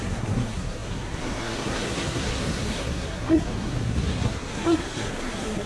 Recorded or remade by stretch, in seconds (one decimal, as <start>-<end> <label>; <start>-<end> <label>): 0.0-5.7 remade